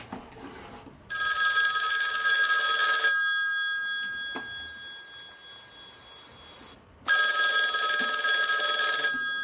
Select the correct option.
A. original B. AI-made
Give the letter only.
A